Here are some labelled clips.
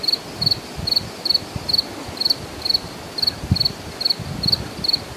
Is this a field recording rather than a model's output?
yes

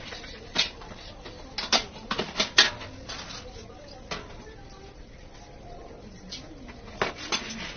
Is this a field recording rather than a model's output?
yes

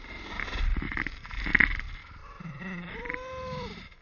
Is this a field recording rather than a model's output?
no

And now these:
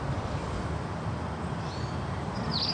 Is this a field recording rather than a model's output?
yes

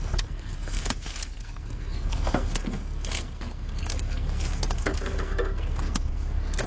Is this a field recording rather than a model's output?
no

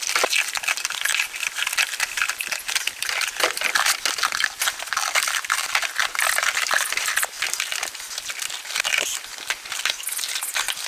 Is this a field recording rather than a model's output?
yes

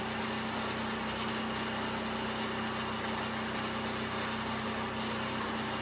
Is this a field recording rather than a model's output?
yes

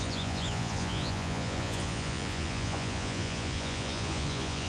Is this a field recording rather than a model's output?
no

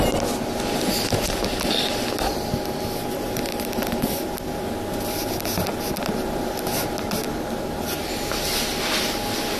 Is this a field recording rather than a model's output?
yes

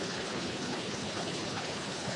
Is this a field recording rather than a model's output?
no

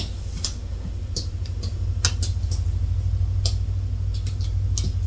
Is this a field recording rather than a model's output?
yes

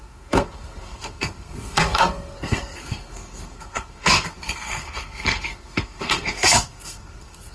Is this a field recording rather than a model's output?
no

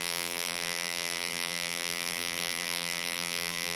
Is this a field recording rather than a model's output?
no